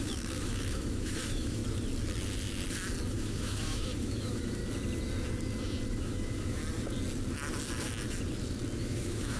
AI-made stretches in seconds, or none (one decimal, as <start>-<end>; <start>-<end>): 0.0-1.6; 3.1-4.6; 5.9-6.6; 8.8-9.4